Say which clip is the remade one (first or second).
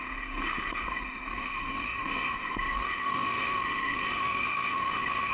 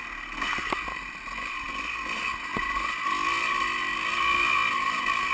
first